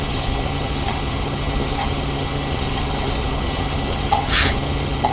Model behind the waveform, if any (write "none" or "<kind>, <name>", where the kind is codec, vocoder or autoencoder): vocoder, HiFi-GAN